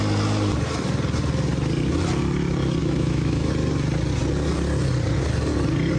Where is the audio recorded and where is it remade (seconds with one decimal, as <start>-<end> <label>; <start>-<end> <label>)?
0.0-2.8 recorded; 2.8-3.5 remade; 3.5-6.0 recorded